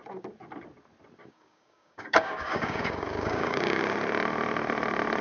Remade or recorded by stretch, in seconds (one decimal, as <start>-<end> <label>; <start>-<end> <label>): 0.0-1.2 recorded; 1.2-3.8 remade; 3.8-5.2 recorded